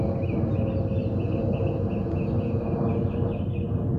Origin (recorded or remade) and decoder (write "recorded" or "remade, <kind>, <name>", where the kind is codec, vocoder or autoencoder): recorded